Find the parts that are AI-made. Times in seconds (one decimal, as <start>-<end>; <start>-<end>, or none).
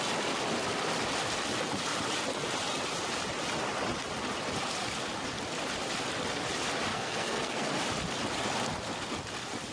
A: 6.9-7.7